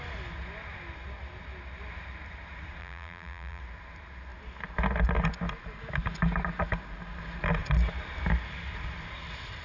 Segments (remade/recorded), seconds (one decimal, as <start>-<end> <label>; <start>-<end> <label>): 0.0-2.8 recorded; 2.8-3.6 remade; 3.6-9.6 recorded